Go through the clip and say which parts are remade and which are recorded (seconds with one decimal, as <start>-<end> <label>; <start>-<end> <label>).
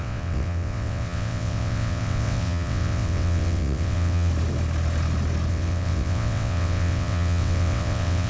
0.0-4.3 remade; 4.3-5.5 recorded; 5.5-8.3 remade